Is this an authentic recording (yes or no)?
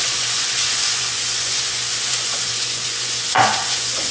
no